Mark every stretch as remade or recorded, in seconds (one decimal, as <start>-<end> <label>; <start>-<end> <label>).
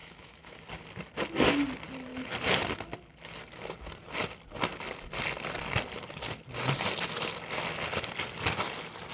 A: 0.0-0.6 remade; 0.6-9.1 recorded